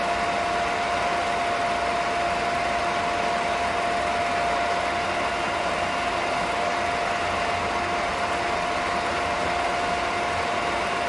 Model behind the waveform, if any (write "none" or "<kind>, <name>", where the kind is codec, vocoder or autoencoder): none